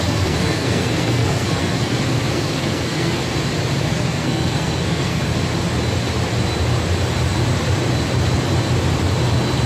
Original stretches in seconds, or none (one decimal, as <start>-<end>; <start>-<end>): 3.2-3.8; 5.3-9.7